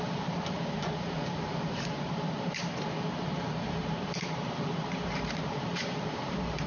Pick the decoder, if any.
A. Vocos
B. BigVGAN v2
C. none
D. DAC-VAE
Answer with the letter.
B